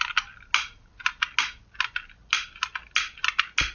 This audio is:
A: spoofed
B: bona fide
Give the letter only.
B